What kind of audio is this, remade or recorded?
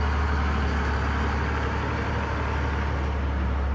recorded